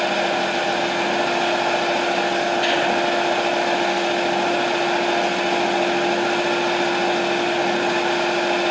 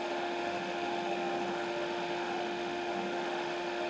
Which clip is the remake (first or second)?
second